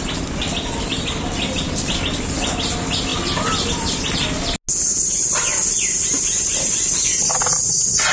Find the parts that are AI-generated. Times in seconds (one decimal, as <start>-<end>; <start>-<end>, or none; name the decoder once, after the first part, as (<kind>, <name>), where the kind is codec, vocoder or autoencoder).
none

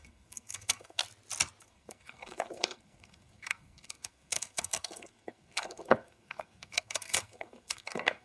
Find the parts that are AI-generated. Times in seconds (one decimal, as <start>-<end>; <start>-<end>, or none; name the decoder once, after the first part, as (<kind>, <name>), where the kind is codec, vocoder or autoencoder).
0.0-1.0 (codec, SNAC); 1.6-8.2

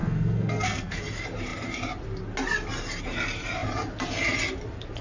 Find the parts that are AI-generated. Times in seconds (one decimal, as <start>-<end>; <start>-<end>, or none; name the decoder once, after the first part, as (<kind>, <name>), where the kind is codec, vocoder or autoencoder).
0.0-1.0 (codec, SNAC)

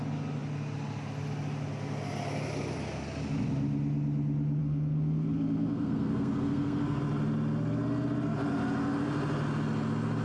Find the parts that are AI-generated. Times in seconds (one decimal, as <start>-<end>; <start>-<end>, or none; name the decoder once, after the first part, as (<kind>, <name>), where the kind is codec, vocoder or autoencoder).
4.6-7.0 (codec, SNAC)

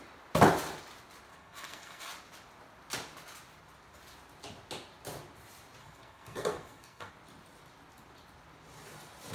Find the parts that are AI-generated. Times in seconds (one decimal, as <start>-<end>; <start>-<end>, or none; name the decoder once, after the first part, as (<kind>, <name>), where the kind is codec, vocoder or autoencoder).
1.3-2.1 (codec, SNAC); 5.8-7.1

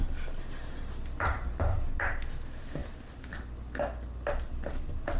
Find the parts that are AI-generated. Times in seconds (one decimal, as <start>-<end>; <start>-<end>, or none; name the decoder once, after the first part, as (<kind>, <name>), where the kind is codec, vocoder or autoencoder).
none